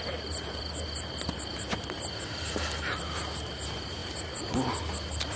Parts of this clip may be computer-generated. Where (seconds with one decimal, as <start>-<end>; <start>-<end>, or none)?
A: none